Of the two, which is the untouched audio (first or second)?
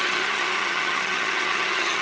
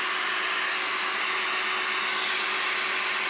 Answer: second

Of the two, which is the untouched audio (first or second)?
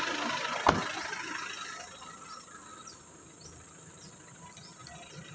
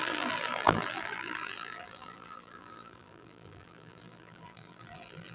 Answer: first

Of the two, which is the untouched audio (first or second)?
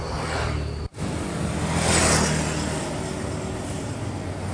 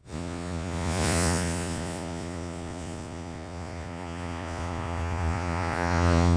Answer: first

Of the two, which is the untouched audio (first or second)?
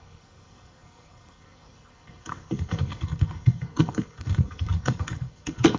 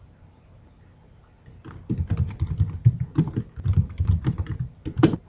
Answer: second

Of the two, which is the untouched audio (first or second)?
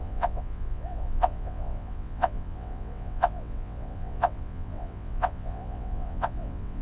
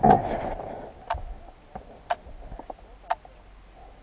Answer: second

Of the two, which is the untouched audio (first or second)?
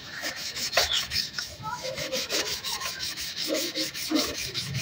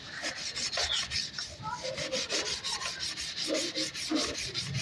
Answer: second